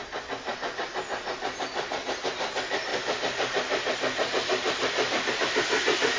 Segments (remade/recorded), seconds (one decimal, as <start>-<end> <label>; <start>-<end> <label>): 0.0-6.2 recorded